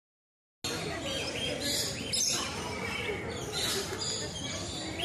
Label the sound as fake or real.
real